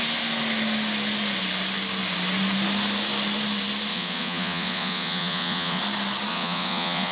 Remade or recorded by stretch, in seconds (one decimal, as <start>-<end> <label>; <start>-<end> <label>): 0.0-3.9 recorded; 3.9-5.8 remade; 5.8-6.3 recorded; 6.3-7.1 remade